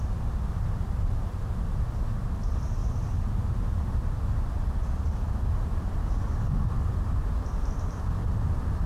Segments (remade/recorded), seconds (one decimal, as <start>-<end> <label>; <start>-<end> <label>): 0.0-6.0 recorded; 6.0-6.8 remade; 6.8-8.9 recorded